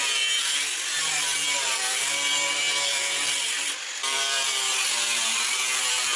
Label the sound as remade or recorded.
remade